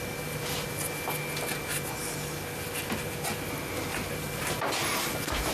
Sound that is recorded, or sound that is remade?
recorded